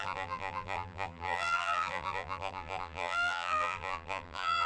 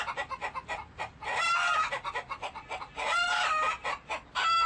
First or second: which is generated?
first